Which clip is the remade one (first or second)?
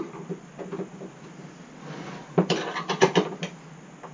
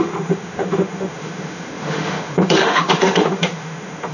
second